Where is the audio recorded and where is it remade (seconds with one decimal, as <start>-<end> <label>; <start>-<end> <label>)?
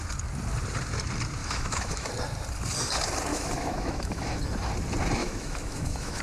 0.0-1.4 recorded; 1.4-2.1 remade; 2.1-3.3 recorded; 3.3-4.4 remade; 4.4-5.2 recorded; 5.2-6.2 remade